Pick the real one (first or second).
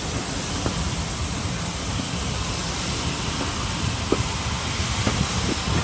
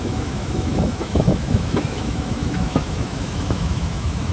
first